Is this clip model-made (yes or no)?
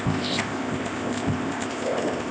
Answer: yes